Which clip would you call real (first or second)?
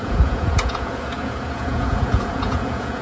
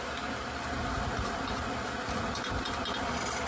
second